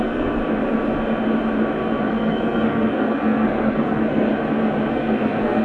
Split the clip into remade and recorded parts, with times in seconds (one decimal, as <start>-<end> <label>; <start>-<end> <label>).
0.0-0.4 remade; 0.4-2.0 recorded; 2.0-4.3 remade; 4.3-4.9 recorded; 4.9-5.6 remade